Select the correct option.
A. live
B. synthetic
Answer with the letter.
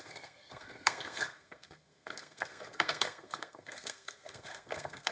B